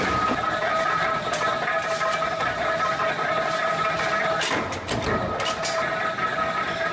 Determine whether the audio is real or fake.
real